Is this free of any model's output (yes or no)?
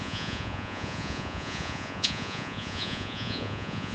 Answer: no